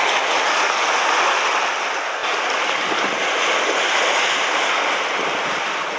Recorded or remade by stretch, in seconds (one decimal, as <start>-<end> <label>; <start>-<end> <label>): 0.0-6.0 recorded